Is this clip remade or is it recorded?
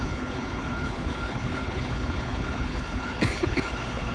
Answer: remade